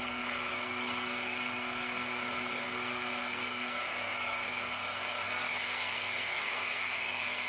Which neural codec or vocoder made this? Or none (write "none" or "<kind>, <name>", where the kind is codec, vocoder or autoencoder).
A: codec, SNAC